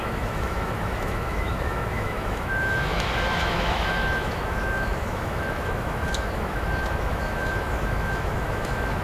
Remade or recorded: remade